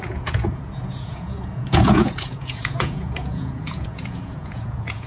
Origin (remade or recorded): remade